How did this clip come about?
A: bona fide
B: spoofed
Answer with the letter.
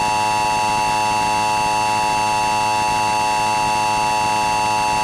A